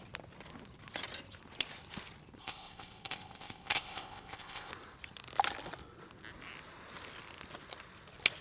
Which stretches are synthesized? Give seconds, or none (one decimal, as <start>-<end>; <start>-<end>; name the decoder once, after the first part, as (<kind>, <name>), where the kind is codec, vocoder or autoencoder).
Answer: 2.4-4.7 (codec, ZipCodec)